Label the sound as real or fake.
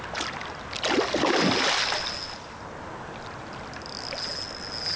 real